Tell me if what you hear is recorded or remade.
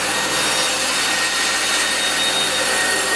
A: recorded